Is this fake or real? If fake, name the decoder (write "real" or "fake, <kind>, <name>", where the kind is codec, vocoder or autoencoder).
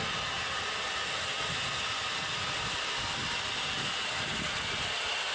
real